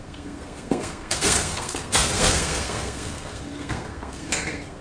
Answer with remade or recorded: remade